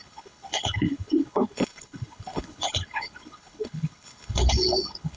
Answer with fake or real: fake